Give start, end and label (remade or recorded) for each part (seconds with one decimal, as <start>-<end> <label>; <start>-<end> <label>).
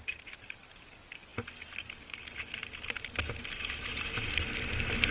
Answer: 0.0-5.1 recorded